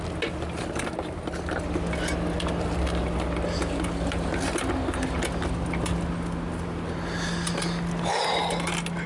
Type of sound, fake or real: real